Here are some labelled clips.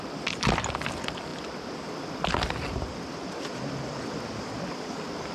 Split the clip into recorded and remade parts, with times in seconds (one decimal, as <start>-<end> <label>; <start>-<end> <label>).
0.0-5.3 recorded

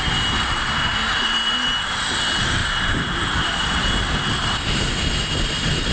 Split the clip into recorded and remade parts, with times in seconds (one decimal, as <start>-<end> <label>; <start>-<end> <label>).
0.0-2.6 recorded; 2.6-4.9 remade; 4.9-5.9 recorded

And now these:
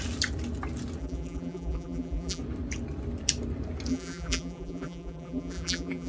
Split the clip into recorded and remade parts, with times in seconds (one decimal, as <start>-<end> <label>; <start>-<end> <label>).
0.0-1.0 recorded; 1.0-2.4 remade; 2.4-3.9 recorded; 3.9-6.1 remade

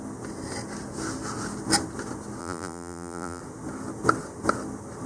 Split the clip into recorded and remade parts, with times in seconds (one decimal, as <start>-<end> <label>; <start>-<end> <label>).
0.0-2.4 recorded; 2.4-3.4 remade; 3.4-5.1 recorded